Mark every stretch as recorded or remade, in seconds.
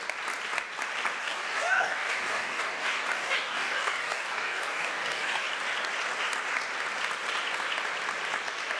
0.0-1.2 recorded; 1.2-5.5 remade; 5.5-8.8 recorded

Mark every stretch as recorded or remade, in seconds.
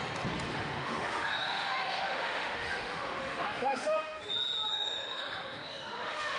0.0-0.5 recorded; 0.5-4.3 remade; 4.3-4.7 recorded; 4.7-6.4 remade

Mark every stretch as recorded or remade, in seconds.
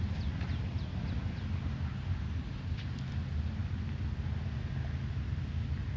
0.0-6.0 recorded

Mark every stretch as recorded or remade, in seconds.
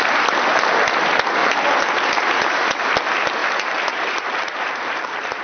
0.0-1.4 recorded; 1.4-2.8 remade; 2.8-3.4 recorded; 3.4-5.4 remade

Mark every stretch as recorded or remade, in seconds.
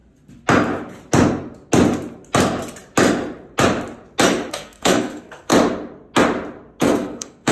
0.0-4.5 recorded; 4.5-5.5 remade; 5.5-6.8 recorded; 6.8-7.5 remade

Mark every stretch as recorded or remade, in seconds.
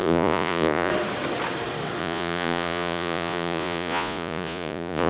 0.0-0.9 remade; 0.9-2.0 recorded; 2.0-5.1 remade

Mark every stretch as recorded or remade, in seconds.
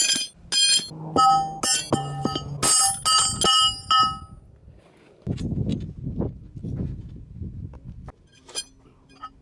0.0-9.4 recorded